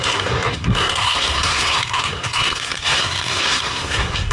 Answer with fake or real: fake